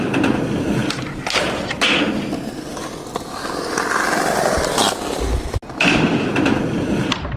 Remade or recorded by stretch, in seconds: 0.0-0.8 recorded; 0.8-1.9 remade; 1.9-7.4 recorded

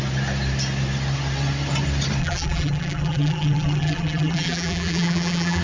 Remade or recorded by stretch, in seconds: 0.0-2.2 recorded; 2.2-5.6 remade

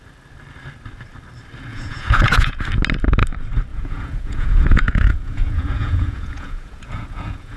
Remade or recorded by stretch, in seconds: 0.0-1.7 recorded; 1.7-2.6 remade; 2.6-3.7 recorded; 3.7-7.6 remade

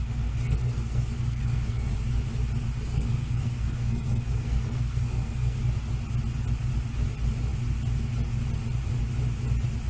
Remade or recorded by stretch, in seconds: 0.0-1.9 remade; 1.9-2.9 recorded; 2.9-5.6 remade; 5.6-9.9 recorded

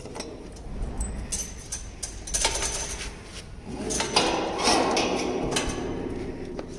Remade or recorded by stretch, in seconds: 0.0-6.8 recorded

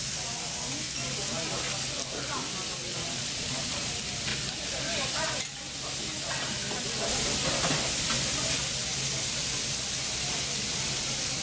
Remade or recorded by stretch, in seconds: 0.0-2.9 recorded; 2.9-3.9 remade; 3.9-11.4 recorded

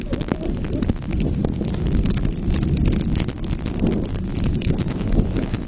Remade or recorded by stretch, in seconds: 0.0-4.3 recorded; 4.3-5.1 remade; 5.1-5.7 recorded

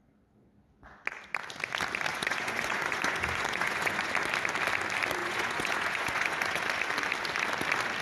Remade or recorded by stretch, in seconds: 0.0-2.1 recorded; 2.1-4.1 remade; 4.1-5.2 recorded; 5.2-6.6 remade; 6.6-8.0 recorded